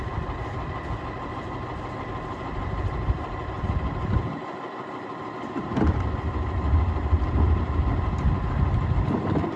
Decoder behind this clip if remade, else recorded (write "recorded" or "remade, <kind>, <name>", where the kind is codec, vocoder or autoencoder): remade, vocoder, BigVGAN v2